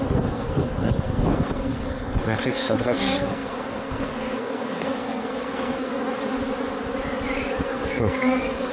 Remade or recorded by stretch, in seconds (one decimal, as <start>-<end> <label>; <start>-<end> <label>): 0.0-6.0 remade; 6.0-7.6 recorded; 7.6-8.7 remade